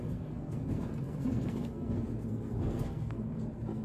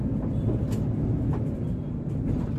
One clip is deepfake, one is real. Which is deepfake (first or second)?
first